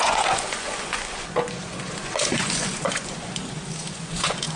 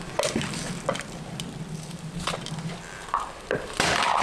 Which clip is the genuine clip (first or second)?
second